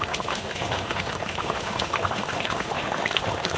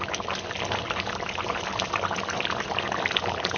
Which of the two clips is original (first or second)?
second